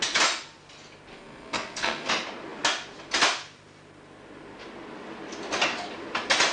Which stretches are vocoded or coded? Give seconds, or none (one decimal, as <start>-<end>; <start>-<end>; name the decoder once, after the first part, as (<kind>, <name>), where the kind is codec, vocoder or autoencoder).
1.1-2.1 (codec, SNAC)